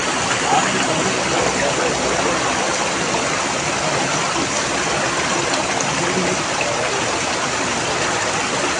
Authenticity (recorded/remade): recorded